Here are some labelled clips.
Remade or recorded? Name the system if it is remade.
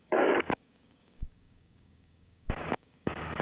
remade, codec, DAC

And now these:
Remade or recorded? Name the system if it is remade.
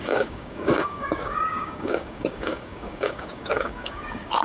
remade, codec, DAC